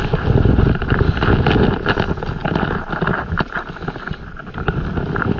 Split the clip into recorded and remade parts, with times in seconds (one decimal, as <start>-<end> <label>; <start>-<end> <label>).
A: 0.0-5.4 recorded